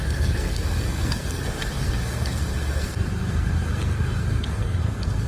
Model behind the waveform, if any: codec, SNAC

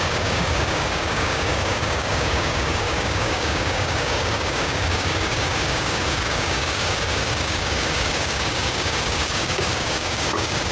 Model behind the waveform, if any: codec, DAC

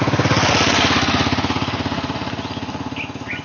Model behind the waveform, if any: none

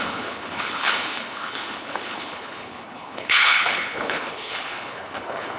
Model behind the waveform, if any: codec, HILCodec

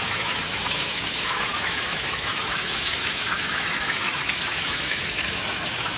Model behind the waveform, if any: autoencoder, DAC-VAE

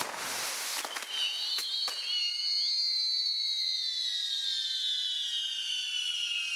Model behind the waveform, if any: none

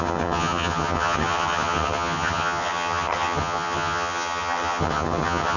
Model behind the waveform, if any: vocoder, HiFi-GAN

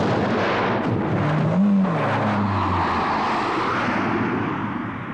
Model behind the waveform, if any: none